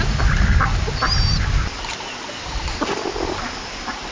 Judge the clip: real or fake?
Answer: real